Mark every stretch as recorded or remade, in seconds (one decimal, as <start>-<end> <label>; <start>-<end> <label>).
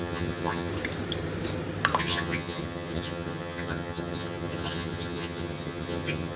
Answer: 0.0-0.7 remade; 0.7-2.0 recorded; 2.0-6.4 remade